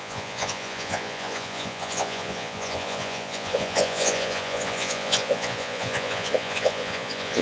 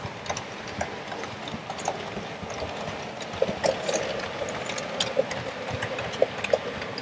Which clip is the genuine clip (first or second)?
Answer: second